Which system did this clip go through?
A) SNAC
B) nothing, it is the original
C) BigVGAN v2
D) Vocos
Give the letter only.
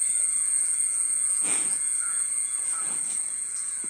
D